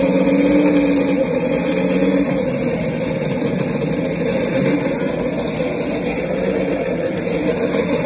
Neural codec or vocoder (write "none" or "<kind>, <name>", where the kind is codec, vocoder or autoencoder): none